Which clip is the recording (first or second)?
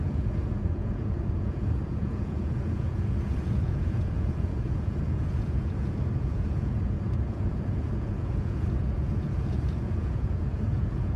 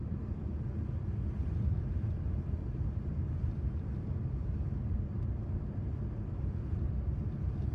second